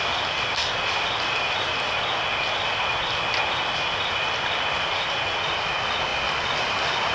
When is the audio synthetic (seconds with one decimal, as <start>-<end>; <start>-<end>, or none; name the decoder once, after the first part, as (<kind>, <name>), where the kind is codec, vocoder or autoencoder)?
none